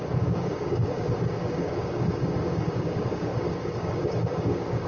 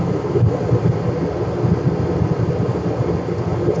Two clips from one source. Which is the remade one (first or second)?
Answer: first